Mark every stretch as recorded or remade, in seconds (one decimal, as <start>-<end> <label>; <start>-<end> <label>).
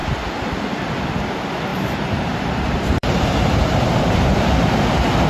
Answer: 0.0-0.9 remade; 0.9-1.7 recorded; 1.7-4.4 remade; 4.4-5.3 recorded